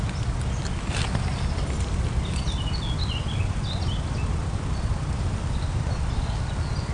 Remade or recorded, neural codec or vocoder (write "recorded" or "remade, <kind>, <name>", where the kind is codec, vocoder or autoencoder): recorded